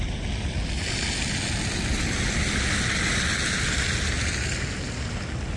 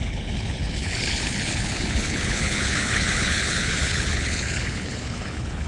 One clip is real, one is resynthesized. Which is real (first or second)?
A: first